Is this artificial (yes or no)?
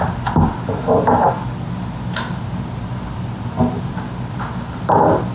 no